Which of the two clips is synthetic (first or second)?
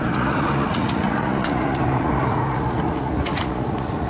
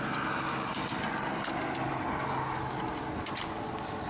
first